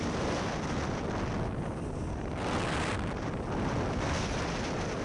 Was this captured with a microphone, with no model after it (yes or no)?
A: yes